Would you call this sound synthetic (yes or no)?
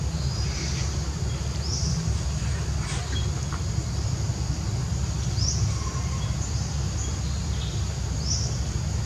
no